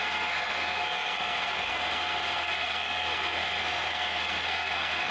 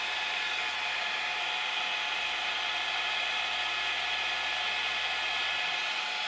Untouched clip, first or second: second